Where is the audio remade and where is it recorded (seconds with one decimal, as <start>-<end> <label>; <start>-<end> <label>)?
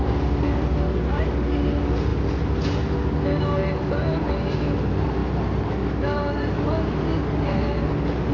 0.0-8.3 recorded